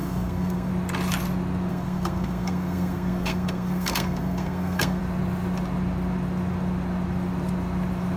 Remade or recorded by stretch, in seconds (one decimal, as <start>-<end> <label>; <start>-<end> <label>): 0.0-0.7 remade; 0.7-1.7 recorded; 1.7-5.0 remade; 5.0-8.2 recorded